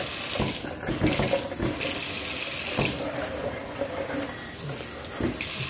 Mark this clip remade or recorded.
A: recorded